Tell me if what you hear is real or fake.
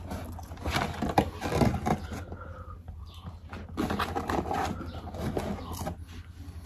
real